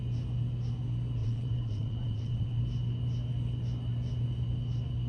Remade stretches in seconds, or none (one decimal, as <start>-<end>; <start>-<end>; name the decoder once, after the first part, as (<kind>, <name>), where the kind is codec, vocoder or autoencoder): 1.2-2.6 (vocoder, WaveNeXt)